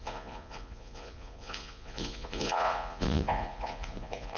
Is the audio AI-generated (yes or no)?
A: yes